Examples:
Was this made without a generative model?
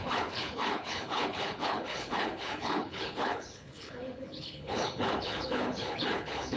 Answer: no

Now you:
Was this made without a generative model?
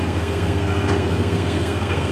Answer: no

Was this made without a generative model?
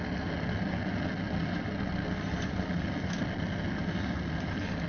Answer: yes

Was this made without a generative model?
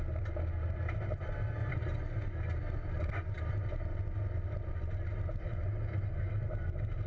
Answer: yes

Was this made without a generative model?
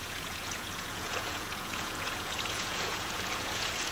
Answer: no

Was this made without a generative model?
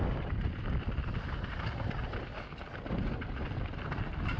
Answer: yes